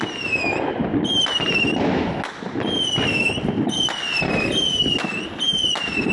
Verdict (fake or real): real